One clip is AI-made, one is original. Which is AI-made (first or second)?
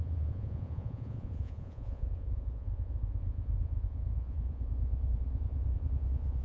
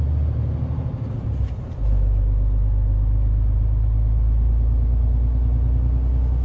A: first